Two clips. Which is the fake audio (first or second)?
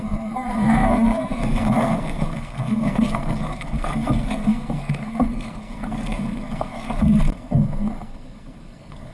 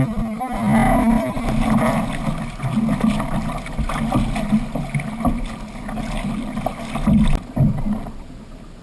first